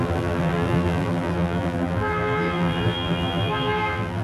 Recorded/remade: remade